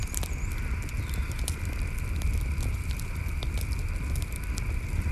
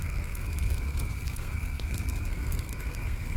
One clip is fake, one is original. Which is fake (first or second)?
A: second